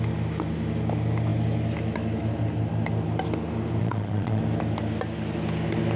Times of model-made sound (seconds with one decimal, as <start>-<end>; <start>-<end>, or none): 3.8-4.4